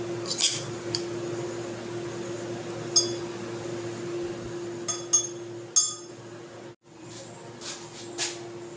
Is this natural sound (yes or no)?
yes